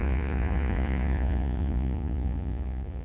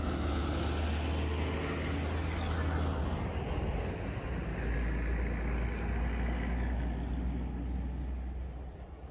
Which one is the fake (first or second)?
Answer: first